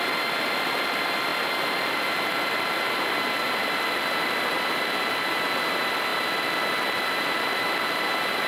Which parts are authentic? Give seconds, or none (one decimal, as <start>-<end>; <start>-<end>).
6.1-7.2